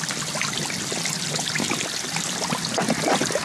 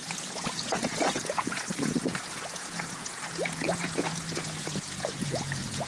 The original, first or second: first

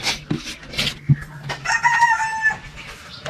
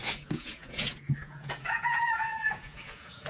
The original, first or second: first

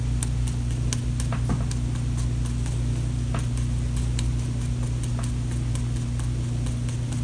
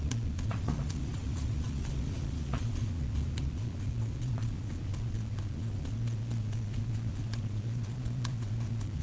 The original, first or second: first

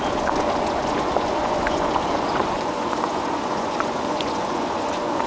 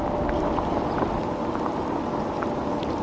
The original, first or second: second